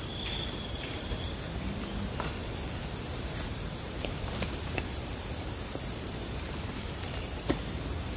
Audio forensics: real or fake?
fake